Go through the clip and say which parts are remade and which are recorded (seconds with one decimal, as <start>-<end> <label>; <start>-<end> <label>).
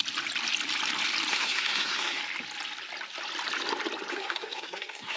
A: 0.0-1.3 recorded; 1.3-2.2 remade; 2.2-4.1 recorded; 4.1-5.2 remade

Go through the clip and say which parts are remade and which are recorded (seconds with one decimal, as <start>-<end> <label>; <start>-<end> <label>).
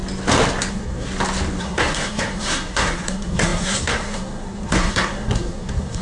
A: 0.0-0.7 recorded; 0.7-1.1 remade; 1.1-1.6 recorded; 1.6-6.0 remade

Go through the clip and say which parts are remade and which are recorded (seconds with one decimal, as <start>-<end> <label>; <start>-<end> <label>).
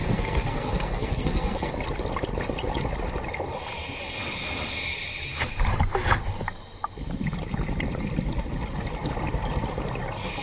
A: 0.0-1.7 remade; 1.7-10.4 recorded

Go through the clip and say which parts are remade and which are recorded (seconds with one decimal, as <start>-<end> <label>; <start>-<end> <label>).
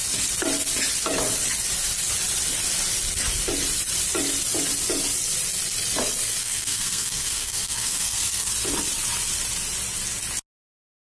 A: 0.0-6.4 recorded; 6.4-8.5 remade; 8.5-11.2 recorded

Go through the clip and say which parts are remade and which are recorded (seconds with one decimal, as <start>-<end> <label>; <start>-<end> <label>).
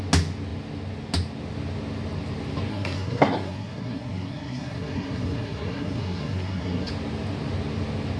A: 0.0-2.7 recorded; 2.7-6.9 remade; 6.9-8.2 recorded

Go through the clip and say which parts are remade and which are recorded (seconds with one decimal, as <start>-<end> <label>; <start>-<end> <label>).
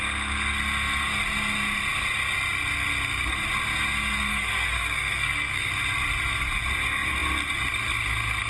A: 0.0-4.3 recorded; 4.3-5.7 remade; 5.7-8.5 recorded